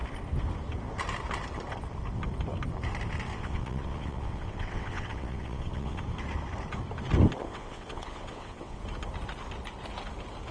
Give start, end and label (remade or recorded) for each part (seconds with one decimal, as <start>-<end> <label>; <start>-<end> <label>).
0.0-3.3 recorded; 3.3-6.0 remade; 6.0-7.4 recorded; 7.4-8.8 remade; 8.8-10.5 recorded